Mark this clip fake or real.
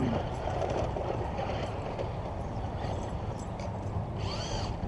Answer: fake